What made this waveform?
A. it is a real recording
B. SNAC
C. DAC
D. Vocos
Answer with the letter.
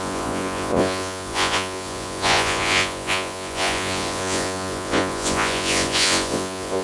D